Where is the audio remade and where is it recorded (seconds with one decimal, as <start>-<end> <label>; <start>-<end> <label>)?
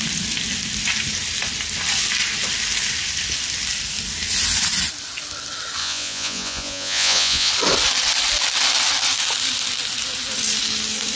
0.0-5.8 recorded; 5.8-7.5 remade; 7.5-11.2 recorded